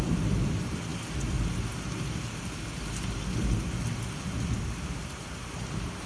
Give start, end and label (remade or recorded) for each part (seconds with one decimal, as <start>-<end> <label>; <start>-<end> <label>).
0.0-0.9 remade; 0.9-4.6 recorded; 4.6-6.1 remade